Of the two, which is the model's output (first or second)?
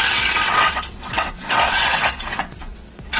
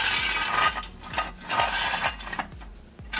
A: first